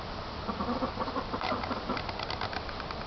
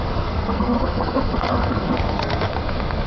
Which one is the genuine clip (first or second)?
first